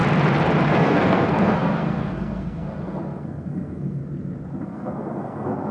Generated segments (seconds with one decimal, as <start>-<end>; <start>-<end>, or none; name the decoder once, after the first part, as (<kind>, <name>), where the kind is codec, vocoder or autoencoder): 0.7-4.0 (codec, SNAC); 4.6-5.7